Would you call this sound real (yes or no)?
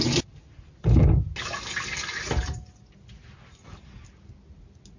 yes